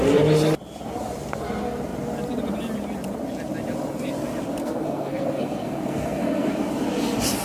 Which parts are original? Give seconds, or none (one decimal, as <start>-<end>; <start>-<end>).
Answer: 0.0-4.6; 6.5-7.4